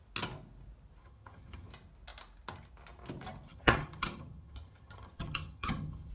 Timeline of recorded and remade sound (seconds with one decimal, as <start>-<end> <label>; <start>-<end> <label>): 0.0-1.0 recorded; 1.0-1.7 remade; 1.7-3.5 recorded; 3.5-6.1 remade